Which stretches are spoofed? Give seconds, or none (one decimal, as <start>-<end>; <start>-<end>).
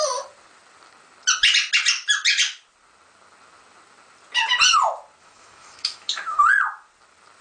5.2-6.4